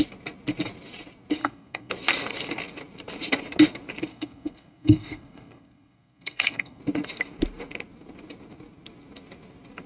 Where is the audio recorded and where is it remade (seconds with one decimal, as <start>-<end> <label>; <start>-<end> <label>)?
0.0-1.4 recorded; 1.4-1.9 remade; 1.9-4.1 recorded; 4.1-6.8 remade; 6.8-9.9 recorded